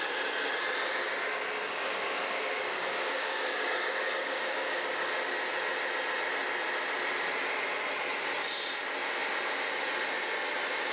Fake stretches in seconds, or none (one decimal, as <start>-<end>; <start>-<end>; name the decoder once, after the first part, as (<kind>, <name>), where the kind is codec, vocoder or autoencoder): 1.6-5.2 (codec, DAC)